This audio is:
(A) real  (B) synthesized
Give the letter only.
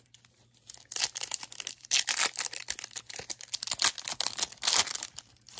A